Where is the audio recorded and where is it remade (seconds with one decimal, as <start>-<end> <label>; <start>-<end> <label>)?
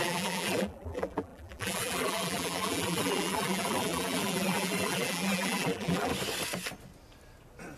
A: 0.0-6.1 remade; 6.1-7.8 recorded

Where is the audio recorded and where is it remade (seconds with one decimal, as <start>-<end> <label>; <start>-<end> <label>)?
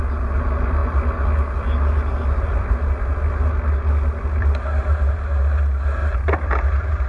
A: 0.0-6.0 recorded; 6.0-7.1 remade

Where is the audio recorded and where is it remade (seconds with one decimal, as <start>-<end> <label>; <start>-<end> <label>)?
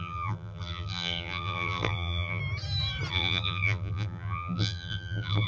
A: 0.0-2.4 remade; 2.4-3.1 recorded; 3.1-5.5 remade